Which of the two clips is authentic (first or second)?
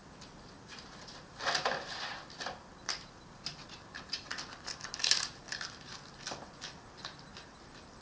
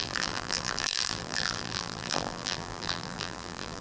first